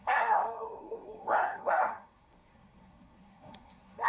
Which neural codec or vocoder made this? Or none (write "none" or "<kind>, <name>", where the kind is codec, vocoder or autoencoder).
codec, SNAC